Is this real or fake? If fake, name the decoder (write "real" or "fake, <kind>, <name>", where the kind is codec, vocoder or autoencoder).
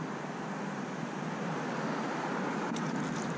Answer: real